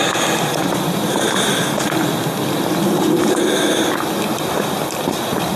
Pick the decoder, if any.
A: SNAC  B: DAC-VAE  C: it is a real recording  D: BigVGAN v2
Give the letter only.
C